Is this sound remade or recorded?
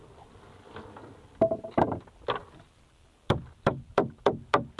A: recorded